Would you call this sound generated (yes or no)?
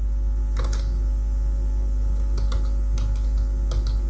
no